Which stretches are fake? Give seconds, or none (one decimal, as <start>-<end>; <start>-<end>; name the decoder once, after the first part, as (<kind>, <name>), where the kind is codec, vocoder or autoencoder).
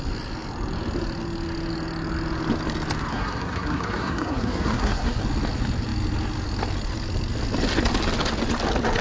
3.1-5.2 (codec, SNAC)